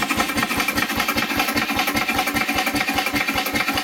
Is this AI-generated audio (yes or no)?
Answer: no